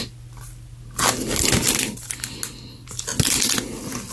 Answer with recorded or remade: recorded